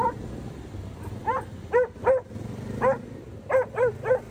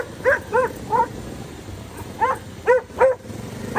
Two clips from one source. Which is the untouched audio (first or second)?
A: first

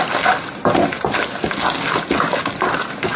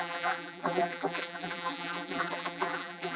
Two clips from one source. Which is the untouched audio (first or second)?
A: first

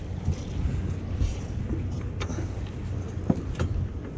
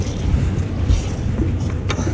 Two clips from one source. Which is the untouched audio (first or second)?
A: first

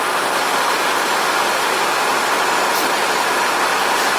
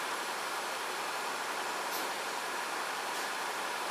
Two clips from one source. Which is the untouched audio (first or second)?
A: first